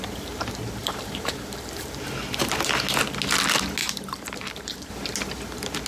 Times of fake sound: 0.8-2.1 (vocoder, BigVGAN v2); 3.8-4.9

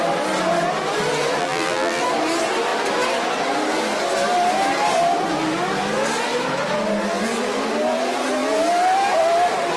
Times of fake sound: 1.4-2.0 (vocoder, BigVGAN v2)